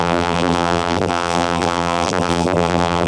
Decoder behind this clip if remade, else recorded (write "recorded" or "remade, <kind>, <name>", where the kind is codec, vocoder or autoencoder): remade, vocoder, BigVGAN v2